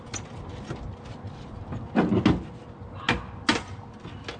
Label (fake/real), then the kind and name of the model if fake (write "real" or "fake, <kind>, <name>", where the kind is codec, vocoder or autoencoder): real